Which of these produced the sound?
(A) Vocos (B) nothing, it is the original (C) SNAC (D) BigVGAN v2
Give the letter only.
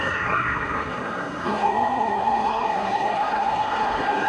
C